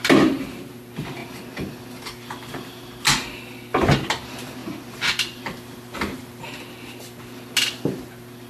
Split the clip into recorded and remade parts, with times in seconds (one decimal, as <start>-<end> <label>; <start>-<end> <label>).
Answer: 0.0-8.5 recorded

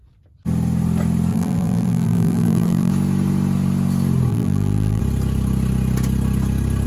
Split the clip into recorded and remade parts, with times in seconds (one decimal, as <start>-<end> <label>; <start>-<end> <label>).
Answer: 0.0-1.3 recorded; 1.3-2.9 remade; 2.9-4.3 recorded; 4.3-5.0 remade; 5.0-6.9 recorded

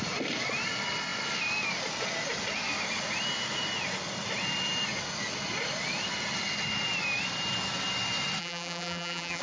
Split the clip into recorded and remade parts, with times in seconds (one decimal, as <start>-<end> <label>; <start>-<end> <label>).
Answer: 0.0-8.4 recorded; 8.4-9.4 remade

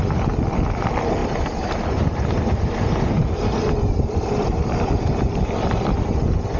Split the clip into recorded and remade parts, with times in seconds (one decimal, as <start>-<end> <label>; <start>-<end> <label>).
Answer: 0.0-1.2 recorded; 1.2-5.2 remade; 5.2-6.6 recorded

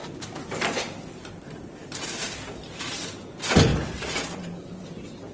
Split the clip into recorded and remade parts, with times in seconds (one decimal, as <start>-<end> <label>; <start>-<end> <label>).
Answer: 0.0-3.2 remade; 3.2-3.7 recorded; 3.7-4.7 remade; 4.7-5.3 recorded

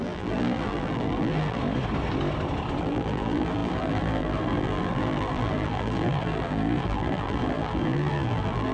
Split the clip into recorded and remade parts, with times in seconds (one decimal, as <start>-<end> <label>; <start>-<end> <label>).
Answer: 0.0-1.6 remade; 1.6-2.8 recorded; 2.8-8.7 remade

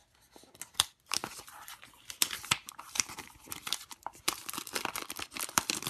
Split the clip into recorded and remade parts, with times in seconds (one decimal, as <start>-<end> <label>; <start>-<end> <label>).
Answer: 0.0-0.7 recorded; 0.7-5.9 remade